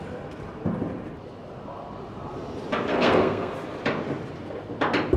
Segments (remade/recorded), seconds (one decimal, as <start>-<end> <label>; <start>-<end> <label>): 0.0-2.9 recorded; 2.9-3.5 remade; 3.5-5.2 recorded